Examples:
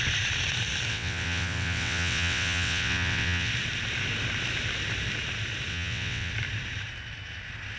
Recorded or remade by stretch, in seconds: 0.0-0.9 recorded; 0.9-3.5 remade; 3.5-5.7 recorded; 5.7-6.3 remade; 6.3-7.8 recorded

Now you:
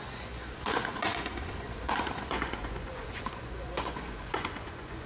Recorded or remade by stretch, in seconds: 0.0-5.1 remade

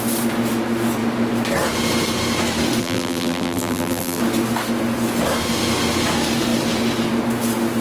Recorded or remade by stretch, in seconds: 0.0-2.8 recorded; 2.8-4.2 remade; 4.2-7.8 recorded

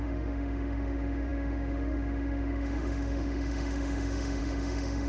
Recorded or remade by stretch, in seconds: 0.0-5.1 remade

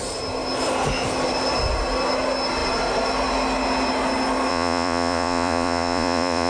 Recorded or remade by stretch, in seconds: 0.0-4.5 recorded; 4.5-6.5 remade

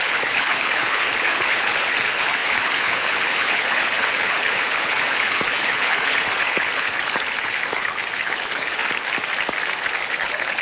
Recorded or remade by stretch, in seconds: 0.0-8.8 remade; 8.8-9.8 recorded; 9.8-10.6 remade

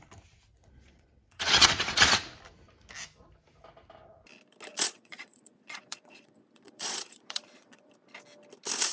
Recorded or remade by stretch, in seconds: 0.0-0.5 recorded; 0.5-2.1 remade; 2.1-4.7 recorded; 4.7-7.9 remade; 7.9-8.9 recorded

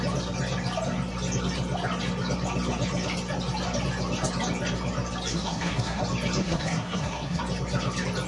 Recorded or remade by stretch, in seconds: 0.0-5.3 recorded; 5.3-6.0 remade; 6.0-6.4 recorded; 6.4-7.4 remade; 7.4-8.3 recorded